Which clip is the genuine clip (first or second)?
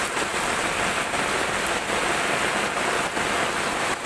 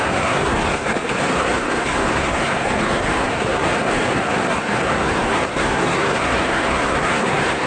first